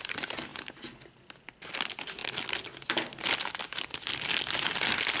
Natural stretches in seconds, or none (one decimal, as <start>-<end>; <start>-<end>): 0.0-5.2